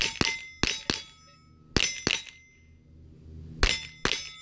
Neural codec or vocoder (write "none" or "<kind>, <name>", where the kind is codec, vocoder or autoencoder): none